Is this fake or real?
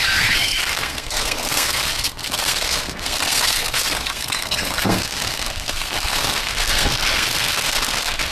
fake